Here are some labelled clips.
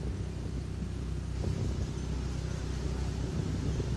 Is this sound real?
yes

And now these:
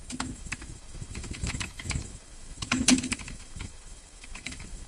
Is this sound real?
no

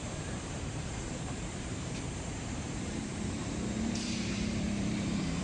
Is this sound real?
no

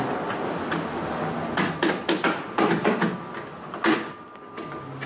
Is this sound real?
yes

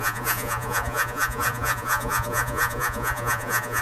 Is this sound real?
no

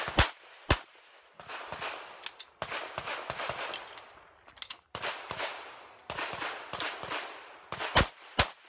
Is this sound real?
yes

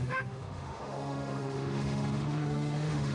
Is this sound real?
no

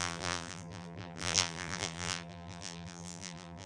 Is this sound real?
no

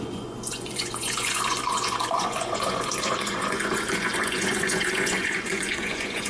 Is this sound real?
no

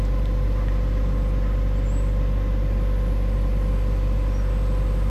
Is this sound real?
yes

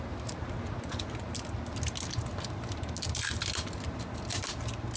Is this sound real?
yes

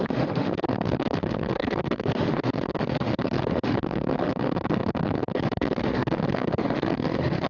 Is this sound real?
no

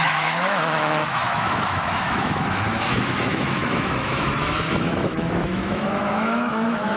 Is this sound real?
no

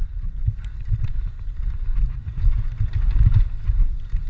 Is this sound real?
yes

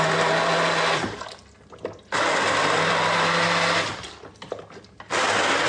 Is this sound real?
yes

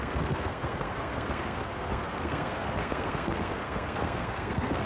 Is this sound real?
no